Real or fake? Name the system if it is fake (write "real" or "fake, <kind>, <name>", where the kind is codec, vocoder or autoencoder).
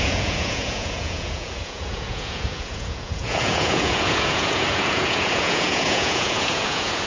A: fake, vocoder, Vocos